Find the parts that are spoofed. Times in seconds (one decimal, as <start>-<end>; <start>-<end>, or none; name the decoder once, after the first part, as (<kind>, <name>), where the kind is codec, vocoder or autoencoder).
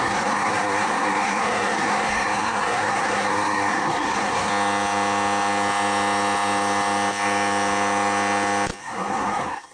0.0-4.5 (codec, SNAC); 8.8-9.7